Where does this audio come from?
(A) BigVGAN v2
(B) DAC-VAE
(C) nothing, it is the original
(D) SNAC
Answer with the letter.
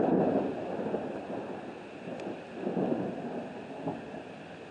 C